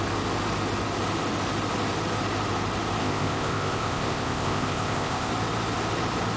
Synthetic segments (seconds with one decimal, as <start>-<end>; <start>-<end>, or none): 3.0-5.3